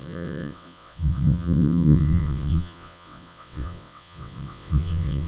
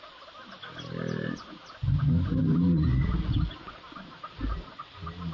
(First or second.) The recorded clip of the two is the second